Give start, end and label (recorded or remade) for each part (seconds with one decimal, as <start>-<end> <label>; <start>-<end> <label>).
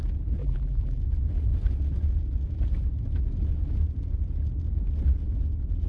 0.0-0.4 recorded; 0.4-1.0 remade; 1.0-5.9 recorded